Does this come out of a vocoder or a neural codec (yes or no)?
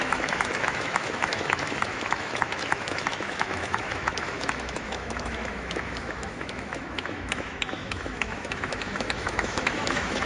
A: yes